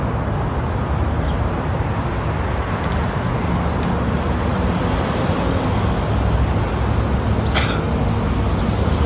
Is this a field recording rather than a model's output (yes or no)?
yes